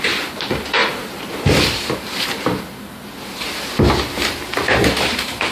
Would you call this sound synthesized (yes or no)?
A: yes